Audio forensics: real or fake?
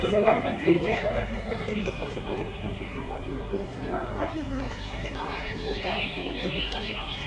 fake